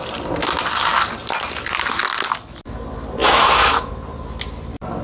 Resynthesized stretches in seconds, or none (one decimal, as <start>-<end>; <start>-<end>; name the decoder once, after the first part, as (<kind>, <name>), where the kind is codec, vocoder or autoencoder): 3.2-3.9 (autoencoder, DAC-VAE)